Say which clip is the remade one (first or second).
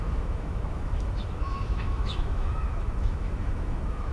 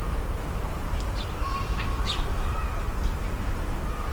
first